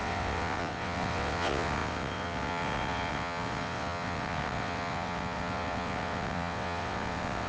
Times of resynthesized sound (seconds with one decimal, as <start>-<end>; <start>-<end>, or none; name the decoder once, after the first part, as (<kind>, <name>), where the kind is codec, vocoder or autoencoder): 0.0-7.5 (vocoder, WaveNeXt)